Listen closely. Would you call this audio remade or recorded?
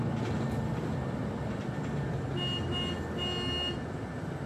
recorded